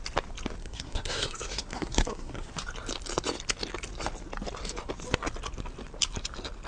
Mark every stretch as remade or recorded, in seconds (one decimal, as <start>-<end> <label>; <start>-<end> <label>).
0.0-0.6 recorded; 0.6-2.5 remade; 2.5-6.7 recorded